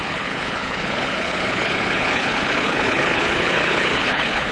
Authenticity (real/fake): fake